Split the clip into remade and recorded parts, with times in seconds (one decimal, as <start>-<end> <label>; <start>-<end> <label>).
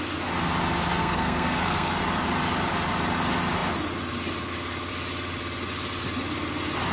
0.0-1.0 recorded; 1.0-2.0 remade; 2.0-6.9 recorded